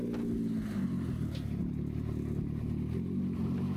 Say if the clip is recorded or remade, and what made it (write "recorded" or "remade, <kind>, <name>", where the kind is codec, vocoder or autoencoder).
recorded